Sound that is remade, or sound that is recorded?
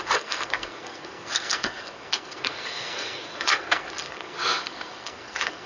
remade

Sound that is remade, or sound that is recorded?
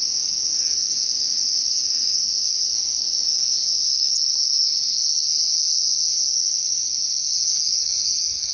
remade